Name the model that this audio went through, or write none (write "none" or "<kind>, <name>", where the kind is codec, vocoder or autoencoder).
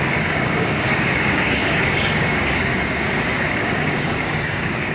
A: codec, DAC